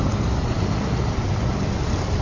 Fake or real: real